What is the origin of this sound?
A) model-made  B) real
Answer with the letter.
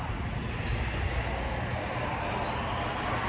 B